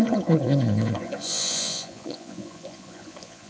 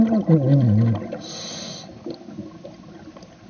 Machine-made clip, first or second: first